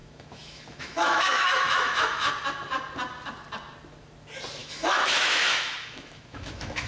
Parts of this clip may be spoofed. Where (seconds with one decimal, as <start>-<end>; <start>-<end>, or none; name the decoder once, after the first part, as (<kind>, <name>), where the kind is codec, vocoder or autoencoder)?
0.0-2.3 (autoencoder, DAC-VAE); 4.6-6.9